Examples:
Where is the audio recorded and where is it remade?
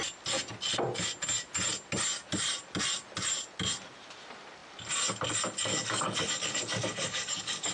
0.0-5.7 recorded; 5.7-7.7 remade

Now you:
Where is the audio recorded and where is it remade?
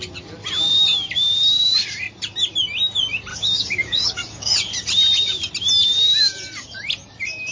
0.0-3.3 recorded; 3.3-4.5 remade; 4.5-7.5 recorded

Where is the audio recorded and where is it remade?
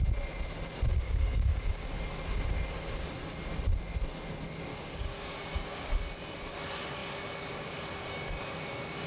0.0-0.9 recorded; 0.9-1.9 remade; 1.9-4.7 recorded; 4.7-5.9 remade; 5.9-9.1 recorded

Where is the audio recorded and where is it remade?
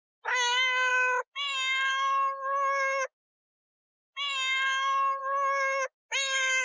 0.0-6.6 recorded